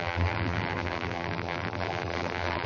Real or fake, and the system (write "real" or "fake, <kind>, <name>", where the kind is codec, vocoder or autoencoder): fake, vocoder, BigVGAN v2